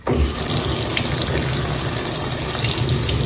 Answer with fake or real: real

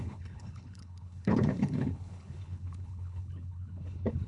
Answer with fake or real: fake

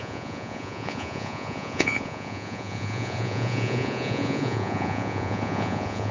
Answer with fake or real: fake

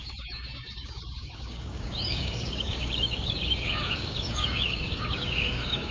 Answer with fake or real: fake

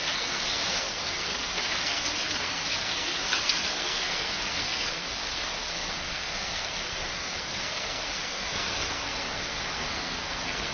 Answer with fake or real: fake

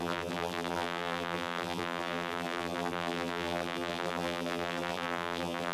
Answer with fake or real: fake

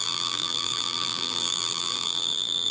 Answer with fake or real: fake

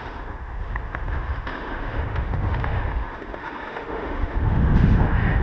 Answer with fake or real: fake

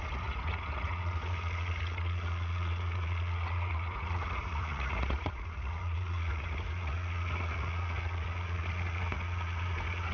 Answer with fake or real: fake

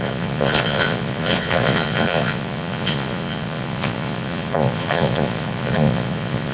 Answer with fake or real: fake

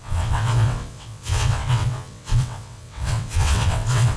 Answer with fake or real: fake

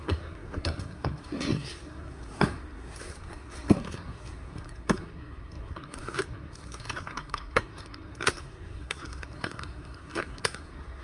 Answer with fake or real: fake